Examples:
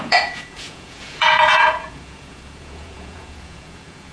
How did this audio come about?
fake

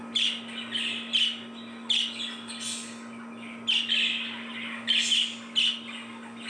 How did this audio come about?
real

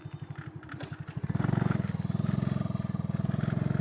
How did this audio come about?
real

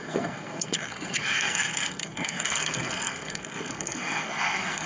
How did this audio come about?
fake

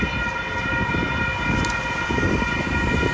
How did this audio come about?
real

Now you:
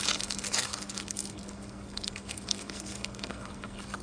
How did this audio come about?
fake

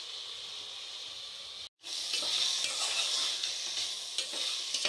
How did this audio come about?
real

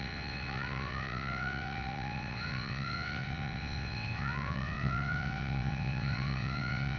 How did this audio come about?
fake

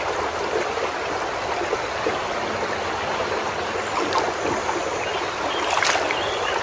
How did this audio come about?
real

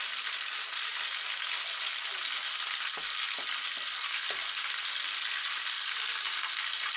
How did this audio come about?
real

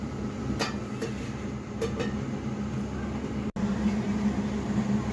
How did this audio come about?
real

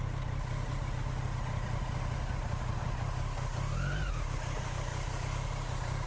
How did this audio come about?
real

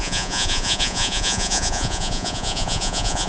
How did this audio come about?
fake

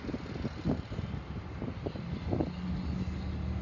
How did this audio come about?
real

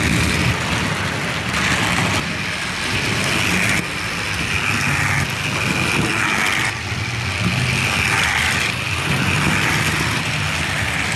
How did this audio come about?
real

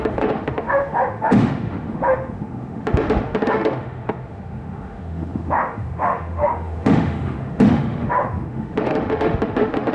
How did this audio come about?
fake